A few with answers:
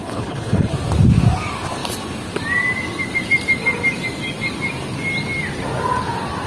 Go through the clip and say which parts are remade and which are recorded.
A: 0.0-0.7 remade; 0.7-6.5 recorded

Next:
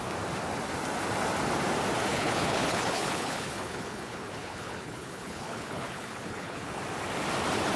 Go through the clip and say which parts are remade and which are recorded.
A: 0.0-2.1 recorded; 2.1-6.8 remade; 6.8-7.8 recorded

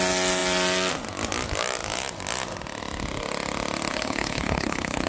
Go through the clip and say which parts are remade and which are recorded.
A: 0.0-3.9 recorded; 3.9-5.1 remade